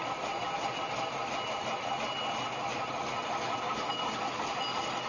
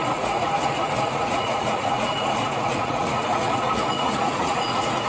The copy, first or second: second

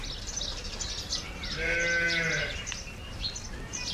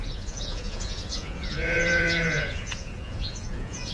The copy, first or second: second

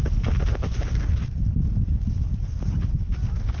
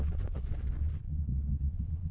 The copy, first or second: second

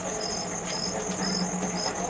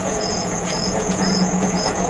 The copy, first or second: second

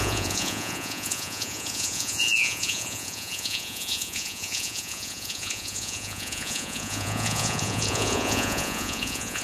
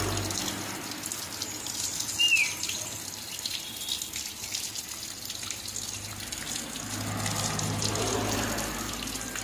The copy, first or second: first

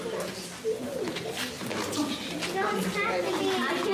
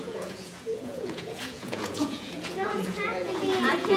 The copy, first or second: second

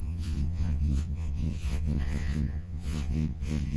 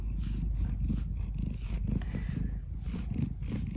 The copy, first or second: first